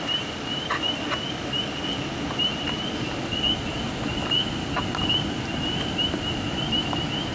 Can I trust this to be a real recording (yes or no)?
yes